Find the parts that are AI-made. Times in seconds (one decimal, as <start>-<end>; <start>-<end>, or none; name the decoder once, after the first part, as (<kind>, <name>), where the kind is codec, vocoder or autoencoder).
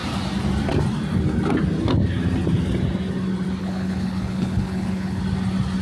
3.6-5.2 (codec, HILCodec)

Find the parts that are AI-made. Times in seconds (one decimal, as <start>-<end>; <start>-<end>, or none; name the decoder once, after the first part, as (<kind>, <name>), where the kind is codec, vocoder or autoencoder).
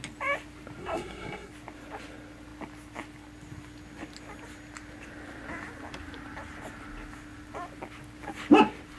0.8-1.5 (codec, SNAC)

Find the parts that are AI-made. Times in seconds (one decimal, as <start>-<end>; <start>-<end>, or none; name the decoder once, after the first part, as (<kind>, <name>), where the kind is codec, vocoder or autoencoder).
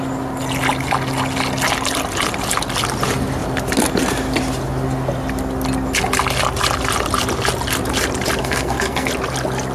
8.4-9.1 (codec, SNAC)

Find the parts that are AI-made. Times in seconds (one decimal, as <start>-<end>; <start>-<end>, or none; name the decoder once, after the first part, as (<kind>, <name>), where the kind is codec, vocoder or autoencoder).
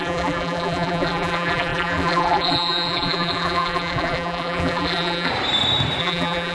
0.0-5.3 (vocoder, BigVGAN v2); 6.0-6.5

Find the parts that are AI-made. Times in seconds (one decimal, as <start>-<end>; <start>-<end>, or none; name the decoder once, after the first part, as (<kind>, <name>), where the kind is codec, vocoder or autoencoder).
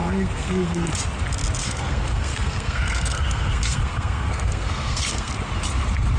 0.0-0.9 (codec, SNAC); 1.6-5.3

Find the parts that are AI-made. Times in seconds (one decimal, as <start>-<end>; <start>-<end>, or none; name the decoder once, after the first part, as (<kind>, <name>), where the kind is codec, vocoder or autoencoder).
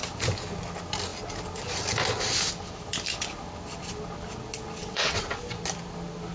4.8-5.4 (vocoder, WaveNeXt)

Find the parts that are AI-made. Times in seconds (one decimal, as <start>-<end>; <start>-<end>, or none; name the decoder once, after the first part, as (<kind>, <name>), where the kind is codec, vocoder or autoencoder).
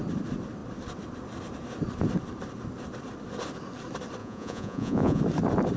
4.2-5.2 (vocoder, Vocos)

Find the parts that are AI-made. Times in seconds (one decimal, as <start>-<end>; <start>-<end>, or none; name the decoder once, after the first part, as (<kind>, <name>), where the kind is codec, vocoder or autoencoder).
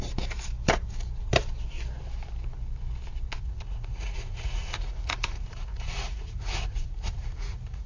3.4-7.9 (vocoder, Vocos)